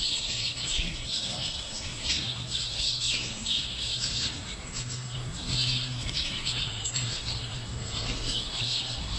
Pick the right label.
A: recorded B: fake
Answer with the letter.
B